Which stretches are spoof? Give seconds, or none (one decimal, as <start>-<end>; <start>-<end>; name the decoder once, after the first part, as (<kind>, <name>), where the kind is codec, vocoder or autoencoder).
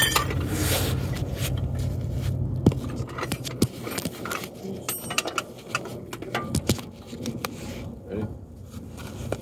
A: none